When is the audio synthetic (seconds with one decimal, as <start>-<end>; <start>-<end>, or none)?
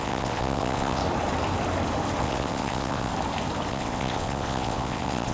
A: 0.0-1.0; 2.2-3.1; 3.7-5.3